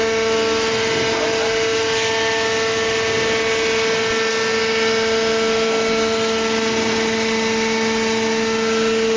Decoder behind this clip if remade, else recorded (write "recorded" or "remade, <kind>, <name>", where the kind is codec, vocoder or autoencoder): recorded